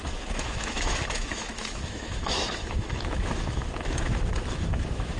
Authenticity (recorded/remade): remade